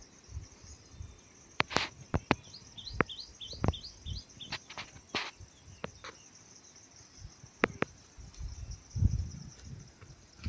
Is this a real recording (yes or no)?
yes